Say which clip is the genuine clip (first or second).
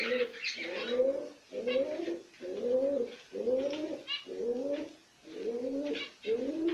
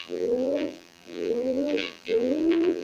first